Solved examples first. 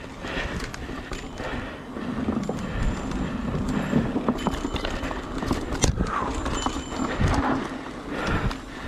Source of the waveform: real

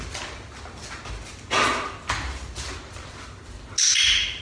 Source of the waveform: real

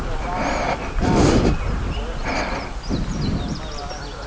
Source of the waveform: real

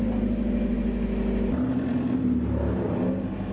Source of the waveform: real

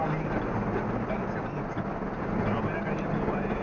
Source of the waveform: real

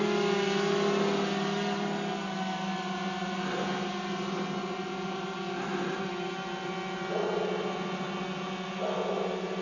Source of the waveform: real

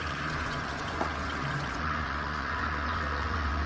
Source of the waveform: fake